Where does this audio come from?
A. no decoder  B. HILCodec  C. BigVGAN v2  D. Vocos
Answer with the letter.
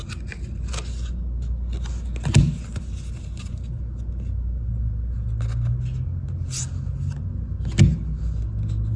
A